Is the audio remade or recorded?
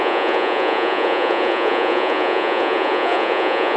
remade